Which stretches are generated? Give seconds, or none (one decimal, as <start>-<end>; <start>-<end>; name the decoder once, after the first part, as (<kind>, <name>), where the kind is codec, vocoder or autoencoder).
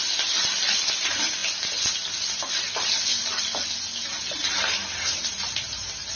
0.0-1.4 (vocoder, BigVGAN v2); 2.5-3.1; 4.2-5.2